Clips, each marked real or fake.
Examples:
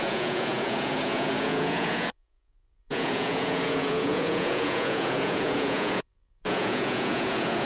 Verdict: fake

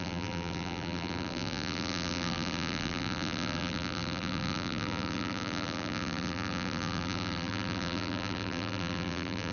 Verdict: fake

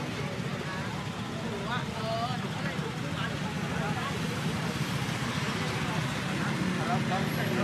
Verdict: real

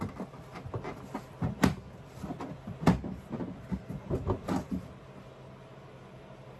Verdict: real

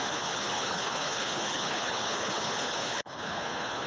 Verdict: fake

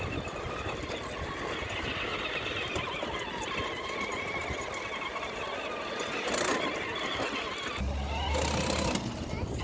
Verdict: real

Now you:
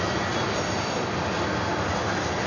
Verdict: real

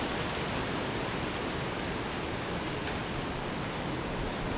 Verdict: real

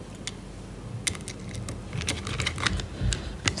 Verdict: real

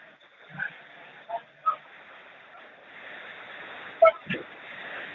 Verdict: real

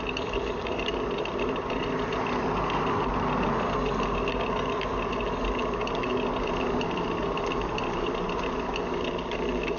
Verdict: real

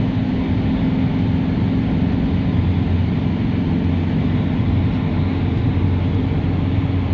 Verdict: real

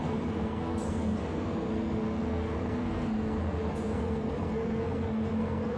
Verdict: fake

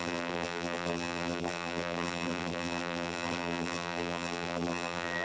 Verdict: fake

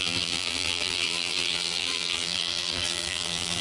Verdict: fake